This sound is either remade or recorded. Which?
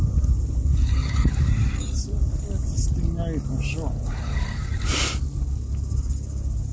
recorded